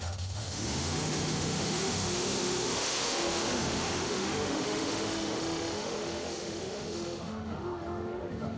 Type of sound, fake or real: fake